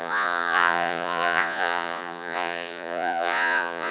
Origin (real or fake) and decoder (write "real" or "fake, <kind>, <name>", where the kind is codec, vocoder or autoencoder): fake, vocoder, Vocos